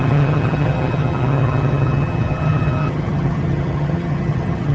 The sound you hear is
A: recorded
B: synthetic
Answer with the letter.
B